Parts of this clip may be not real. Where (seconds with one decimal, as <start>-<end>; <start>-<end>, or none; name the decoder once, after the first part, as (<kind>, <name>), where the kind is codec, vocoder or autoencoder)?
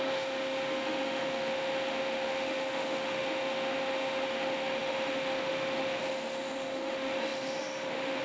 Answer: 0.0-8.2 (autoencoder, DAC-VAE)